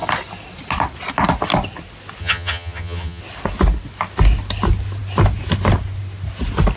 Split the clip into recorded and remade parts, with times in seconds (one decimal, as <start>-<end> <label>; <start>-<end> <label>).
0.0-2.2 recorded; 2.2-3.2 remade; 3.2-6.8 recorded